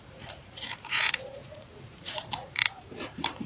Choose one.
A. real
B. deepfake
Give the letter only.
B